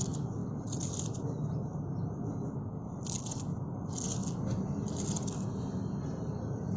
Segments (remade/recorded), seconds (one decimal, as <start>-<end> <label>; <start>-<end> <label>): 0.0-0.4 recorded; 0.4-1.2 remade; 1.2-6.8 recorded